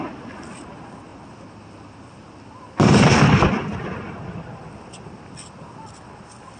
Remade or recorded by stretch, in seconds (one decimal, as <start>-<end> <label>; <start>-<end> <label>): 0.0-6.6 recorded

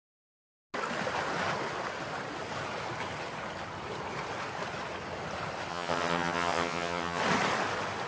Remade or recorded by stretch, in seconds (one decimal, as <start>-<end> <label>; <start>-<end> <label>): 0.0-5.7 recorded; 5.7-7.2 remade; 7.2-8.1 recorded

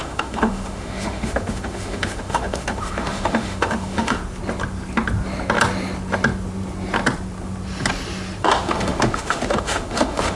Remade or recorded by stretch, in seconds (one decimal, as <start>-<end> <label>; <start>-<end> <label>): 0.0-4.2 remade; 4.2-8.4 recorded; 8.4-10.4 remade

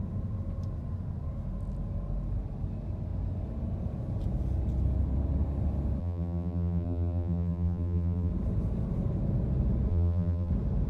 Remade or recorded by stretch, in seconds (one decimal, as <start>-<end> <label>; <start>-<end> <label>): 0.0-6.0 recorded; 6.0-8.3 remade; 8.3-9.9 recorded; 9.9-10.5 remade; 10.5-10.9 recorded

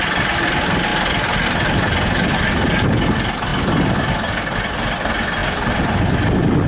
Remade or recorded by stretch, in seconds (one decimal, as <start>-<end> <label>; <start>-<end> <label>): 0.0-6.7 recorded